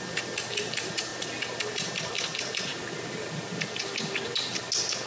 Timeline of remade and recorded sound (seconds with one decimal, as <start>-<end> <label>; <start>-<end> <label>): 0.0-1.1 remade; 1.1-1.7 recorded; 1.7-2.7 remade; 2.7-5.1 recorded